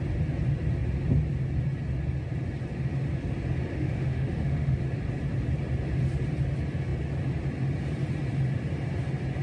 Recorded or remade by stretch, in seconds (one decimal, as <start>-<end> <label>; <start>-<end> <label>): 0.0-3.7 recorded; 3.7-4.8 remade; 4.8-9.4 recorded